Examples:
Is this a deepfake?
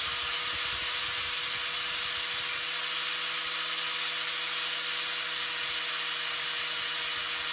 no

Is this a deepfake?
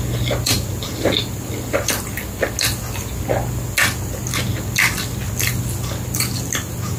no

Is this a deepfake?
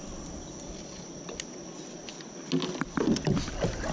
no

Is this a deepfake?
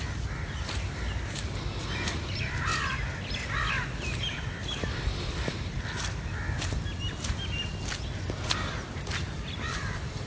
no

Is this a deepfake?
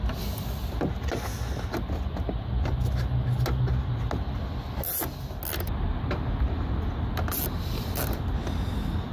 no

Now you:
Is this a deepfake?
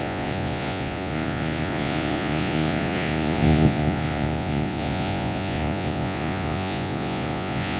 yes